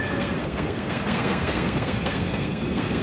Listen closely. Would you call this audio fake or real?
fake